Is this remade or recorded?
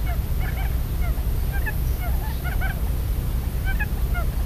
recorded